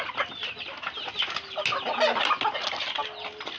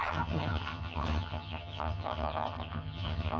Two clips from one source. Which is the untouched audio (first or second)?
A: first